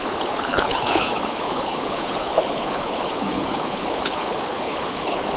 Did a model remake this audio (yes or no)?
yes